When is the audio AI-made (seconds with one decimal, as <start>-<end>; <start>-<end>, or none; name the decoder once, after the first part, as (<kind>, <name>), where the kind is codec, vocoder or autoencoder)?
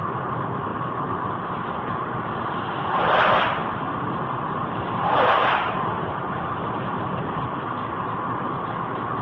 none